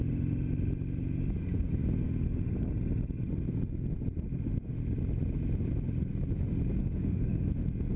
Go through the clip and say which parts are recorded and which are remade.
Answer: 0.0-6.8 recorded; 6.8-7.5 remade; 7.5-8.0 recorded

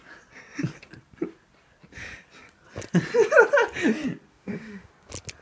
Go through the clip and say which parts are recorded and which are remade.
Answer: 0.0-4.3 recorded; 4.3-4.9 remade; 4.9-5.4 recorded

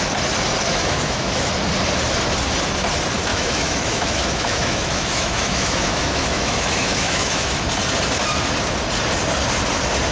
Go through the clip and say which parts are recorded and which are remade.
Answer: 0.0-0.7 recorded; 0.7-1.5 remade; 1.5-3.3 recorded; 3.3-7.6 remade; 7.6-10.1 recorded